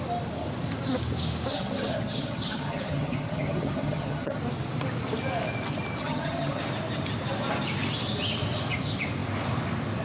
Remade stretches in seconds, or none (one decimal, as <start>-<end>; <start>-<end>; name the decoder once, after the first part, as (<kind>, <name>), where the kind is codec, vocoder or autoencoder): 1.5-4.4 (vocoder, HiFi-GAN); 6.0-6.6

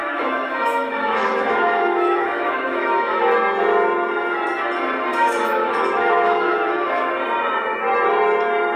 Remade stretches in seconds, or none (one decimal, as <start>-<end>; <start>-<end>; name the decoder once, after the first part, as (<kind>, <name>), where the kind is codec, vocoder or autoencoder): 0.0-3.2 (autoencoder, DAC-VAE); 5.1-7.1

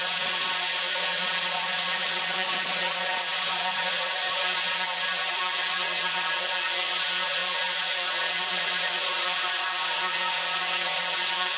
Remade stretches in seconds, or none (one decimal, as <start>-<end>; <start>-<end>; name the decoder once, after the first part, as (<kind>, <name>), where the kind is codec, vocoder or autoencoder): 0.0-11.6 (vocoder, Vocos)

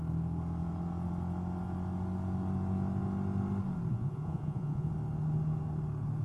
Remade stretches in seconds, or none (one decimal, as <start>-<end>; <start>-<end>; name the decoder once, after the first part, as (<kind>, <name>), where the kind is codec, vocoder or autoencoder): 3.9-4.9 (vocoder, Vocos)